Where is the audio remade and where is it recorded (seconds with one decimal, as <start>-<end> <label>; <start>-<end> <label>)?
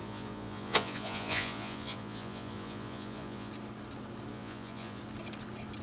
0.0-3.5 remade; 3.5-4.3 recorded; 4.3-5.0 remade; 5.0-5.8 recorded